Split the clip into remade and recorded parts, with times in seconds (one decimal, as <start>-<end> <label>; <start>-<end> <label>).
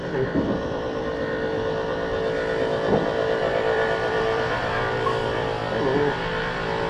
0.0-1.1 remade; 1.1-2.9 recorded; 2.9-5.6 remade; 5.6-6.4 recorded; 6.4-6.9 remade